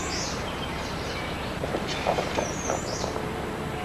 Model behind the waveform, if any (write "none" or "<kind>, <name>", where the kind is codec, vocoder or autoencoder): vocoder, BigVGAN v2